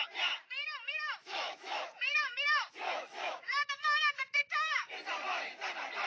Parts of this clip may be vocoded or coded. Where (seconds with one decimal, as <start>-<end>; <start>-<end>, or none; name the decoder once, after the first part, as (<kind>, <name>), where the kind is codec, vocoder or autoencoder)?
1.2-4.9 (autoencoder, DAC-VAE)